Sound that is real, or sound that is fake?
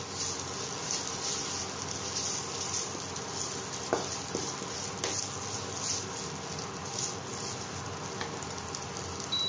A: real